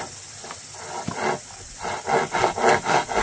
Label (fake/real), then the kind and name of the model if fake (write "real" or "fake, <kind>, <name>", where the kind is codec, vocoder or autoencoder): real